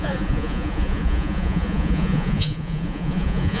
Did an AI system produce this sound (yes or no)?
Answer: yes